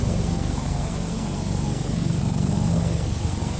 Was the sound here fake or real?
fake